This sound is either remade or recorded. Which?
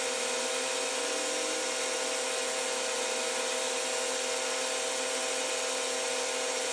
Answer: recorded